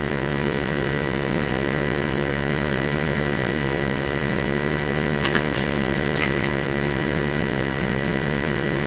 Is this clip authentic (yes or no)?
no